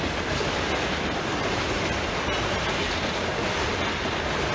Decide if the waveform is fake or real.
real